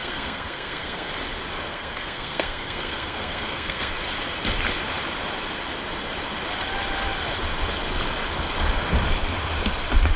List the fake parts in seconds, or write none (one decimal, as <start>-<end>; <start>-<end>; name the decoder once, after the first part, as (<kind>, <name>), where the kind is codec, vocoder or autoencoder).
0.0-1.1 (codec, SNAC); 1.7-3.9